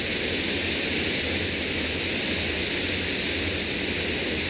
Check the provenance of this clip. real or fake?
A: real